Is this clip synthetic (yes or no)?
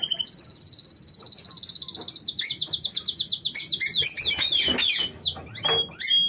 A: no